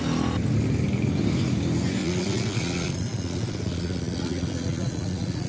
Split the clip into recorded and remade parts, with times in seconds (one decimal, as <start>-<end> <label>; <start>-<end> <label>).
0.0-2.0 recorded; 2.0-5.5 remade